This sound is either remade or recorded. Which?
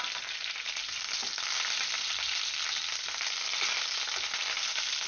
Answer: recorded